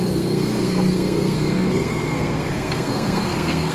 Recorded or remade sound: remade